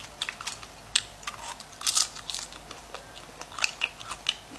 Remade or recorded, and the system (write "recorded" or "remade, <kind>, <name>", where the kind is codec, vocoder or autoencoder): recorded